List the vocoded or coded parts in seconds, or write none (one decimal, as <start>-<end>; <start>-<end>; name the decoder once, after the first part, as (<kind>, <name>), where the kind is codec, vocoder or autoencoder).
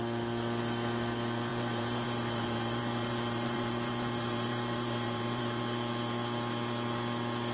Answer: 1.5-5.6 (vocoder, BigVGAN v2)